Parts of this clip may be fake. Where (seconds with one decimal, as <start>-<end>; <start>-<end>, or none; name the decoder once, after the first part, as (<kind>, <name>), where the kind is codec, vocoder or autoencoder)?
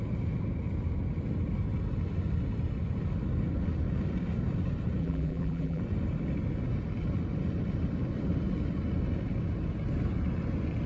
5.0-5.8 (vocoder, BigVGAN v2)